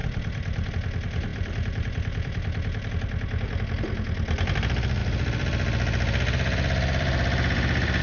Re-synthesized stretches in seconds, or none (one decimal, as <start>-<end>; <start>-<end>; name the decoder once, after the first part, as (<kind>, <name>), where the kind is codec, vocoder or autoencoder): 0.0-0.7 (vocoder, BigVGAN v2); 1.3-2.9; 5.0-8.0

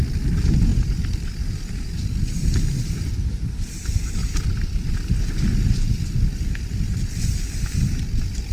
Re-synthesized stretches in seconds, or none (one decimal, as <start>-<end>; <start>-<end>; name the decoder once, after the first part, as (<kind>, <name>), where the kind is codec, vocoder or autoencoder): none

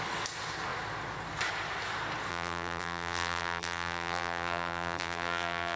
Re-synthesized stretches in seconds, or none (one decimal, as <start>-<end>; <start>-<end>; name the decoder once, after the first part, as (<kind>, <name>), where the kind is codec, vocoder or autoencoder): 2.3-5.8 (vocoder, BigVGAN v2)